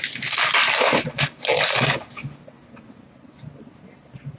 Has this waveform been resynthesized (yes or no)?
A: no